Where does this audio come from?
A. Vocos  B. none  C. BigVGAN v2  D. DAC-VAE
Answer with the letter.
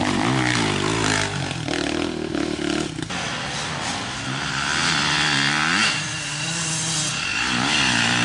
B